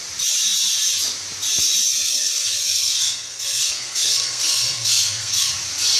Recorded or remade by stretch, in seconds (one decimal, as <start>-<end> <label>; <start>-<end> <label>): 0.0-1.9 recorded; 1.9-5.5 remade; 5.5-6.0 recorded